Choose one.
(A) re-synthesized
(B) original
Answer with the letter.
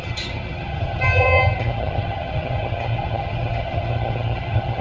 A